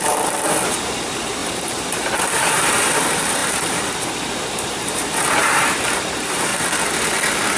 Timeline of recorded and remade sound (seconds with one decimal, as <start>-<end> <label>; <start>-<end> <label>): 0.0-6.5 remade; 6.5-7.6 recorded